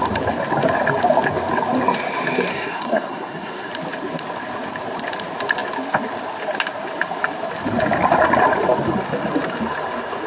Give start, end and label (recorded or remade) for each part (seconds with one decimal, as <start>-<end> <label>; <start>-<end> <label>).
0.0-2.5 recorded; 2.5-3.7 remade; 3.7-10.3 recorded